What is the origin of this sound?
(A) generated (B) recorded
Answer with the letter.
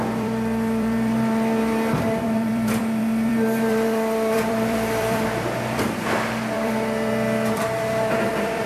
A